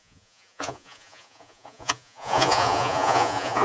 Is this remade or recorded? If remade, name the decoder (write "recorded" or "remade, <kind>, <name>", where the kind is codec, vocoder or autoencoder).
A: remade, vocoder, Vocos